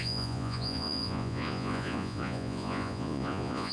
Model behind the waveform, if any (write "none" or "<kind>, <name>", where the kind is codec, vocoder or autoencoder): vocoder, Vocos